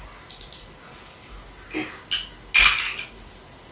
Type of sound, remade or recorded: recorded